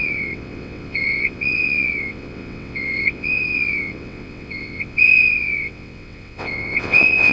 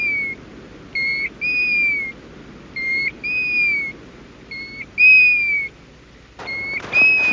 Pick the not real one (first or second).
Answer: first